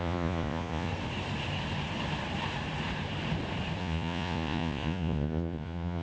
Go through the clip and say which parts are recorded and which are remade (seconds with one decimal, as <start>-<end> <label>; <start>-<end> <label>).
0.0-0.9 remade; 0.9-3.8 recorded; 3.8-6.0 remade